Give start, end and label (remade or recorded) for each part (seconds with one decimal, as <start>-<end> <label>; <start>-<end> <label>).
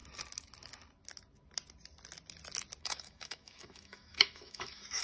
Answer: 0.0-2.8 recorded; 2.8-5.0 remade